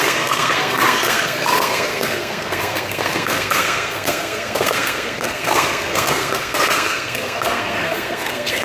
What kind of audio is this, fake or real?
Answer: fake